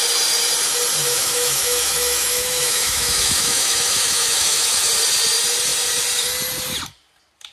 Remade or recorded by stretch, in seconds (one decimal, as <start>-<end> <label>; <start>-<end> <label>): 0.0-1.0 recorded; 1.0-4.9 remade; 4.9-7.5 recorded